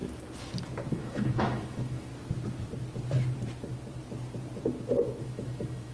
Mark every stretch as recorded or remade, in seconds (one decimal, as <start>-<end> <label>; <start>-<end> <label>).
0.0-0.9 recorded; 0.9-2.1 remade; 2.1-5.2 recorded; 5.2-5.9 remade